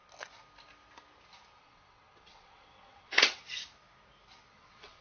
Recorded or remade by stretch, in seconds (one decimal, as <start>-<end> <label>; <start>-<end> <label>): 0.0-1.6 recorded; 1.6-3.4 remade; 3.4-4.5 recorded; 4.5-5.0 remade